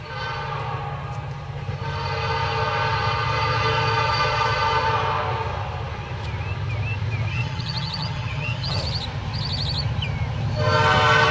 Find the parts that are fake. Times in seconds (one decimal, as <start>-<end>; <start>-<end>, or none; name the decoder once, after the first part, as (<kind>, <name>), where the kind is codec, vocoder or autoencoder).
7.3-8.8 (vocoder, HiFi-GAN)